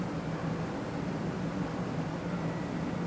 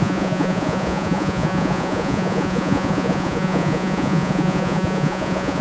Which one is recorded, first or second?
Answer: first